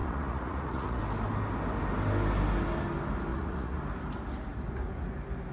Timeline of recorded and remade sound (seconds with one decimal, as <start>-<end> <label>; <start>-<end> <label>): 0.0-1.0 remade; 1.0-3.3 recorded; 3.3-3.8 remade; 3.8-5.5 recorded